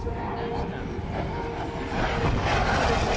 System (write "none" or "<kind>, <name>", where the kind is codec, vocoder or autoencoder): none